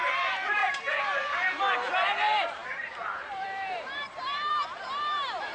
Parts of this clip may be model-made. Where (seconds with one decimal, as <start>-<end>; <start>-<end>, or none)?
0.0-5.5